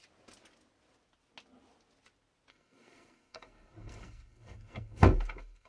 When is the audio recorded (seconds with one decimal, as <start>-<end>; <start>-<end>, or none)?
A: 0.0-2.5